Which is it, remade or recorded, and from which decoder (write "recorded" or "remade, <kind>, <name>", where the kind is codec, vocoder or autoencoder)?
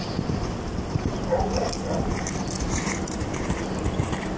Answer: recorded